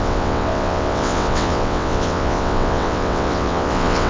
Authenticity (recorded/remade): remade